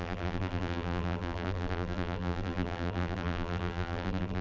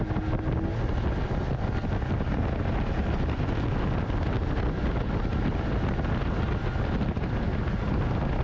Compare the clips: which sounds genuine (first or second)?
second